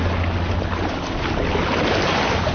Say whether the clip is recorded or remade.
recorded